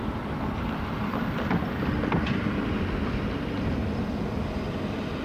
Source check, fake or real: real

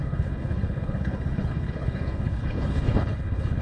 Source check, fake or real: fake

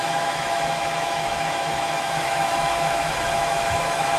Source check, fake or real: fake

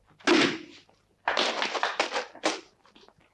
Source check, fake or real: real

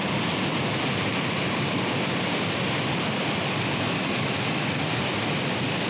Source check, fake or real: real